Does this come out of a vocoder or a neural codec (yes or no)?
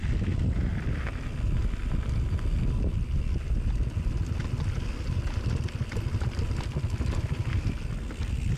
no